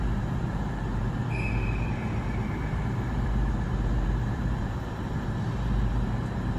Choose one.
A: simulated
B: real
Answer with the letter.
A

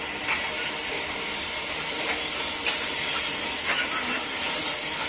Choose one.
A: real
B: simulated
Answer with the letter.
A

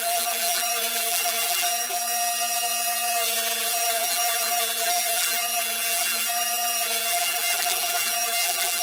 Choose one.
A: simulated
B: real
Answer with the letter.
A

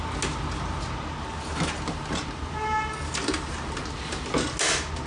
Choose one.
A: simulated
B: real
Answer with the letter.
B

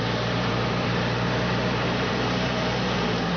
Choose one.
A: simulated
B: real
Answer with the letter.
A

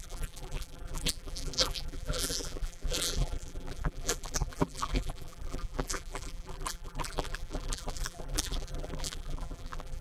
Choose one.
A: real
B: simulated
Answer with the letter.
B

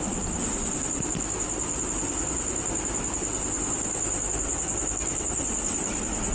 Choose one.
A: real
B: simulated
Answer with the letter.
A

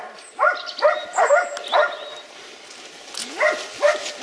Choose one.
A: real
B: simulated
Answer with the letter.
A